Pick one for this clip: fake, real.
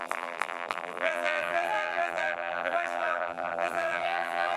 fake